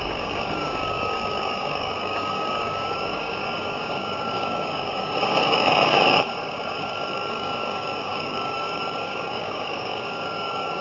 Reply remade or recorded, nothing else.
remade